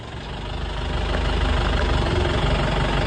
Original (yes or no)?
yes